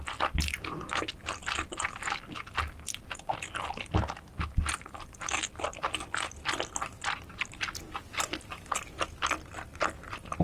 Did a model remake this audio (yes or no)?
no